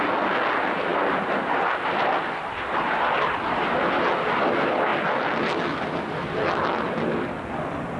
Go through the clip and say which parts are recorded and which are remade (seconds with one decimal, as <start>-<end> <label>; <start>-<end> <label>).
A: 0.0-8.0 recorded